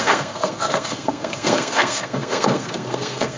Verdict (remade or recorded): remade